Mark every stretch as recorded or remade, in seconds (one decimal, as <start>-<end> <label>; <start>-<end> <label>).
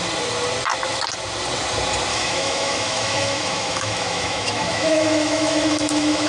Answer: 0.0-2.1 recorded; 2.1-6.3 remade